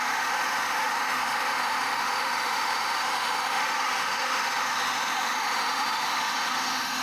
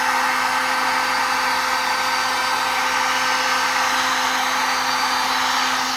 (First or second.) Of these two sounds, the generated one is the first